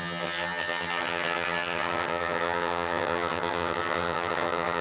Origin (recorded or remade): remade